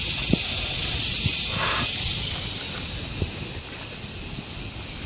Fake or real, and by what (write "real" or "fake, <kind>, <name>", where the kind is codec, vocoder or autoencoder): real